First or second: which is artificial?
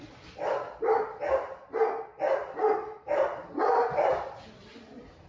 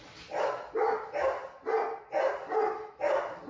first